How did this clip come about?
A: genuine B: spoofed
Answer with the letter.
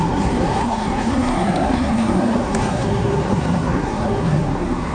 B